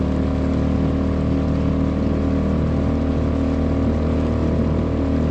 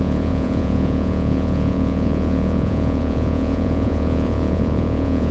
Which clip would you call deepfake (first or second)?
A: second